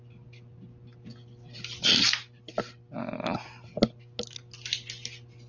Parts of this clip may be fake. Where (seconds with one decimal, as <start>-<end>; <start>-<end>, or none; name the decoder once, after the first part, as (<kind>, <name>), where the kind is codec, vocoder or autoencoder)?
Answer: none